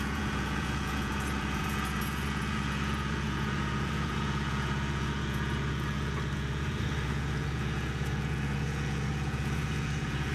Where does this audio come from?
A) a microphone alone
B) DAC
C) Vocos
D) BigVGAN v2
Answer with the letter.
C